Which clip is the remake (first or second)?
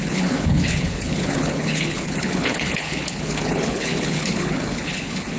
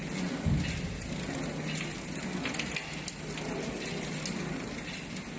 first